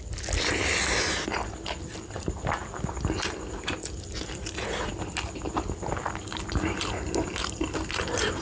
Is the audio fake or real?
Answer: real